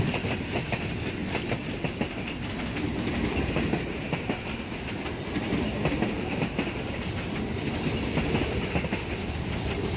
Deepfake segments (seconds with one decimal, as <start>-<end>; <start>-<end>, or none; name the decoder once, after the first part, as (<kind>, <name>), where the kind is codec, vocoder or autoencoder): none